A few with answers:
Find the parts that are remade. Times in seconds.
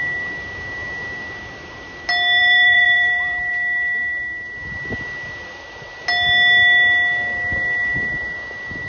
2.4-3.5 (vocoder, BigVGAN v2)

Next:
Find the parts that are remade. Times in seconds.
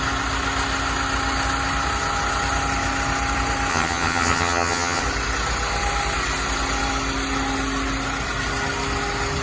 3.7-5.0 (vocoder, HiFi-GAN)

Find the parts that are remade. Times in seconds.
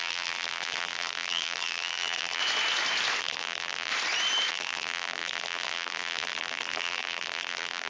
0.0-2.4 (vocoder, BigVGAN v2); 3.2-3.9; 4.5-7.9